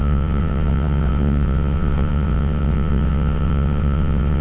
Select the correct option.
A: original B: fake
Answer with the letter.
B